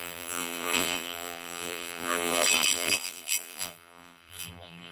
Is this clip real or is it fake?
fake